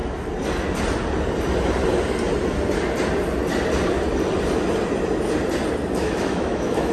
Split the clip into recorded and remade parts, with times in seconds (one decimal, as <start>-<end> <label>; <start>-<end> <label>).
0.0-6.0 recorded; 6.0-6.9 remade

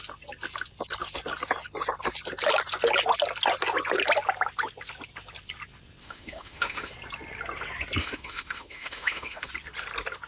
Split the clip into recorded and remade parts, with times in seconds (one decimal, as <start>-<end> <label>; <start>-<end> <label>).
0.0-6.0 recorded; 6.0-6.9 remade; 6.9-8.0 recorded; 8.0-9.5 remade; 9.5-10.3 recorded